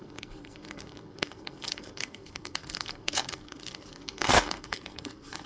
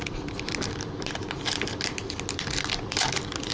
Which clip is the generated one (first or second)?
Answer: first